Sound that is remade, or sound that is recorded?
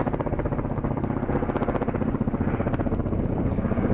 remade